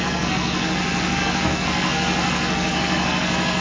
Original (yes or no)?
no